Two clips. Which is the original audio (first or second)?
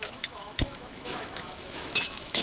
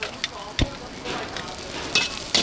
second